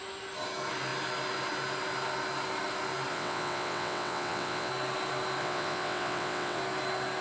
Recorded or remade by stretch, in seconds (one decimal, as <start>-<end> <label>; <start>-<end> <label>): 0.0-3.1 recorded; 3.1-4.7 remade; 4.7-5.4 recorded; 5.4-6.6 remade; 6.6-7.2 recorded